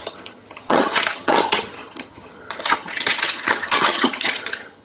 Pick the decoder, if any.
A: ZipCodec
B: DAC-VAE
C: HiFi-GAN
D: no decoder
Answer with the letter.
C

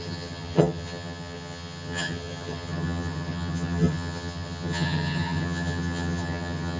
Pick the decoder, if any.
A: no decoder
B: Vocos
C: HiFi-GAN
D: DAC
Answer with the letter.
C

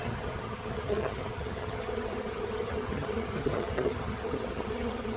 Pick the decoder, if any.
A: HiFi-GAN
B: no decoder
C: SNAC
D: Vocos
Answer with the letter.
A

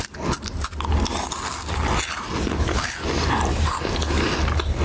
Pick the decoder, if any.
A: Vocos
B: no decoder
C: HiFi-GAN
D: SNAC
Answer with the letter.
B